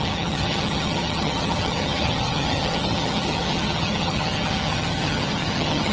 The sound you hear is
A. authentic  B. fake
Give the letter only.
B